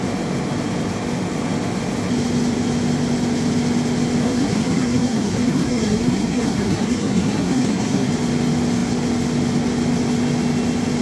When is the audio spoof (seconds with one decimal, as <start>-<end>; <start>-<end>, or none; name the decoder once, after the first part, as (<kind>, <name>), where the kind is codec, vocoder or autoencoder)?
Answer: 4.2-8.1 (codec, SNAC)